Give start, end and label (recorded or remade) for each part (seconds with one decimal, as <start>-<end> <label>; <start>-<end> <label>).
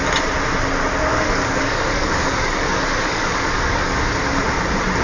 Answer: 0.0-1.1 recorded; 1.1-4.1 remade; 4.1-5.0 recorded